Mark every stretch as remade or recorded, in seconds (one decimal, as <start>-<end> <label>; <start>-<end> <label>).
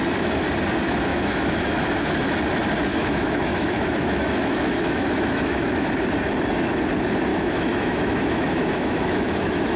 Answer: 0.0-1.1 recorded; 1.1-2.1 remade; 2.1-2.9 recorded; 2.9-5.9 remade; 5.9-7.3 recorded; 7.3-9.8 remade